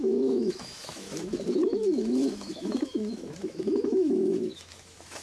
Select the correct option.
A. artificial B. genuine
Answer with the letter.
A